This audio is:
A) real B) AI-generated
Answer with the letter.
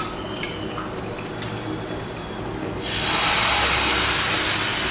A